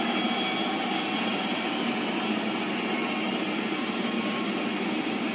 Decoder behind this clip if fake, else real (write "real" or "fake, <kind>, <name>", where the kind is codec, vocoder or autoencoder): real